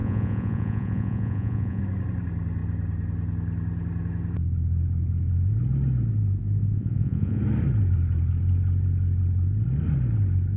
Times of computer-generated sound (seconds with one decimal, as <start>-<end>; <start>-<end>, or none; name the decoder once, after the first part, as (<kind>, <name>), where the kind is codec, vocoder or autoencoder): 0.0-1.8 (vocoder, Vocos); 6.6-7.4